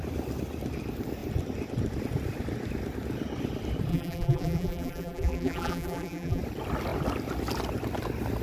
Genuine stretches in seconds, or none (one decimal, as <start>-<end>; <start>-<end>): 0.0-3.9; 6.4-8.4

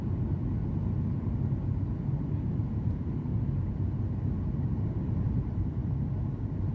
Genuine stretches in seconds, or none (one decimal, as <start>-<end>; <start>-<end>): 0.0-2.5; 3.3-4.5; 5.8-6.7

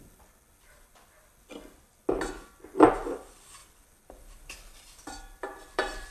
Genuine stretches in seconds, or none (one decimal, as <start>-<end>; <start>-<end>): 0.0-3.6

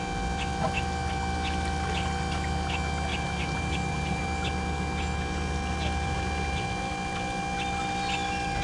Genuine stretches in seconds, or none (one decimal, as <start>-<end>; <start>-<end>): 0.0-3.1; 4.2-8.6

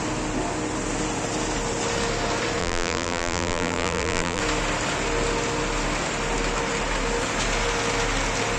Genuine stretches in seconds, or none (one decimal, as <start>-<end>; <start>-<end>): 0.0-2.6; 4.4-8.6

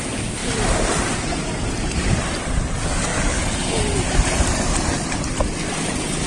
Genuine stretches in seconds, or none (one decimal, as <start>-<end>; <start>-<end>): 0.0-0.4; 2.4-3.1; 4.9-6.3

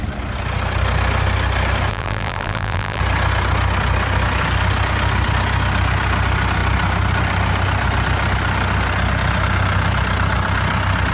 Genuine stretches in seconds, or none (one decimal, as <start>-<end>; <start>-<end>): 0.0-1.9; 3.0-11.1

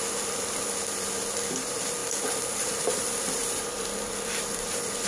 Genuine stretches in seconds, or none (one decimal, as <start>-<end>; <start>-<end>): none